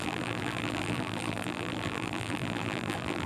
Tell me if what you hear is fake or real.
fake